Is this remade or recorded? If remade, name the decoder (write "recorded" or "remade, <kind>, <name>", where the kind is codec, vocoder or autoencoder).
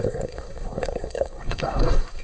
remade, codec, SNAC